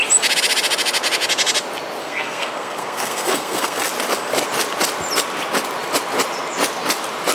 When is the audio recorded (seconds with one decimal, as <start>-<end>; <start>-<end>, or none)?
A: 0.0-2.0; 3.9-7.3